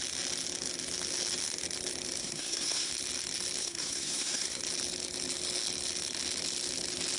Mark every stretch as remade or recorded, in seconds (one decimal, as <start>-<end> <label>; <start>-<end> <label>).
0.0-2.2 recorded; 2.2-2.9 remade; 2.9-3.6 recorded; 3.6-4.6 remade; 4.6-7.2 recorded